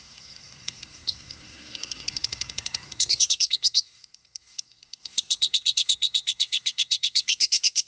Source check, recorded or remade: remade